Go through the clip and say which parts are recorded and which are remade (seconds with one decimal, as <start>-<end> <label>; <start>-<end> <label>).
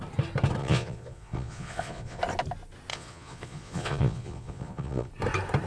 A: 0.0-0.6 recorded; 0.6-2.2 remade; 2.2-2.9 recorded; 2.9-5.1 remade; 5.1-5.7 recorded